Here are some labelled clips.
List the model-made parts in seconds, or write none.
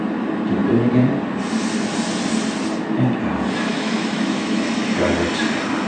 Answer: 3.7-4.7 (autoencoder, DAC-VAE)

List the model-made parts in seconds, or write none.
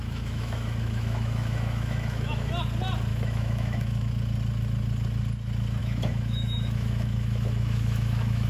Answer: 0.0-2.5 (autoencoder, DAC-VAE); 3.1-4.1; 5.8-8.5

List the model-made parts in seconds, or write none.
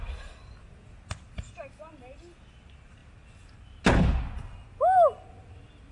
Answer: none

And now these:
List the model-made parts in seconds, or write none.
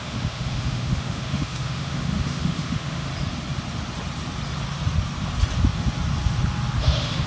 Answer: 0.0-3.1 (autoencoder, DAC-VAE); 6.8-7.3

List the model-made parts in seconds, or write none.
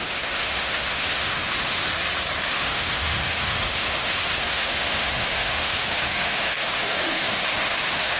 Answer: 0.0-1.9 (autoencoder, DAC-VAE); 2.5-8.2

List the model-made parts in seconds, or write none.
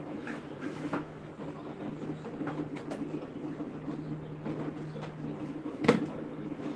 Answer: 0.0-1.3 (autoencoder, DAC-VAE); 5.4-6.8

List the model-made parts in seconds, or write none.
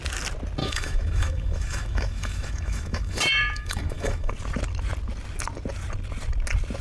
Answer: 0.6-4.3 (autoencoder, DAC-VAE)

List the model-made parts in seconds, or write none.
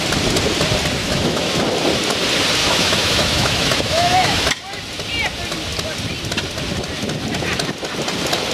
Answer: 1.0-1.6 (autoencoder, DAC-VAE); 2.6-4.4